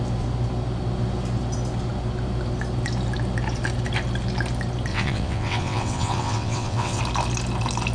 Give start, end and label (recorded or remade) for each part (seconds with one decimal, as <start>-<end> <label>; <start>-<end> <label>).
0.0-4.9 recorded; 4.9-7.0 remade; 7.0-7.9 recorded

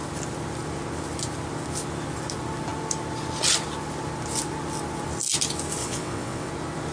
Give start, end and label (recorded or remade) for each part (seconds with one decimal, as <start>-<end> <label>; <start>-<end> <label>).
0.0-5.8 recorded; 5.8-6.5 remade; 6.5-6.9 recorded

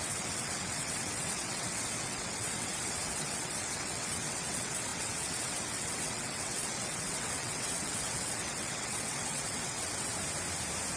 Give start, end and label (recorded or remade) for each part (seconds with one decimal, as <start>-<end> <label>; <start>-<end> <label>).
0.0-10.1 remade; 10.1-11.0 recorded